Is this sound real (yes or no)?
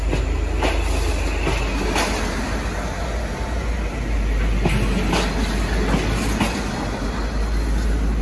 yes